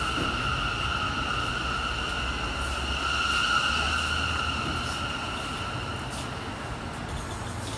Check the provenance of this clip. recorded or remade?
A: recorded